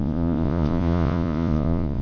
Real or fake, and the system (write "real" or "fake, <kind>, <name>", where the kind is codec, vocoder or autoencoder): fake, vocoder, Vocos